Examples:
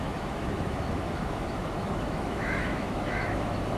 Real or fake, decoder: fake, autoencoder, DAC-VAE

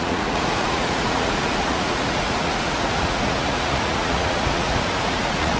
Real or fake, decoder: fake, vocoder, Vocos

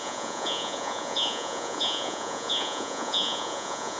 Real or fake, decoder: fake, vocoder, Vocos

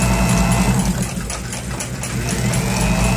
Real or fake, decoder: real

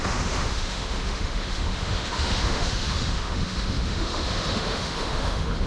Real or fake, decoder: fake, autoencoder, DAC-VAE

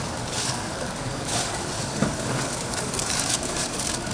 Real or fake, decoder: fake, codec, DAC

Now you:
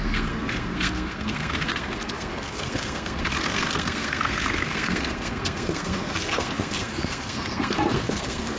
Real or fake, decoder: fake, codec, SNAC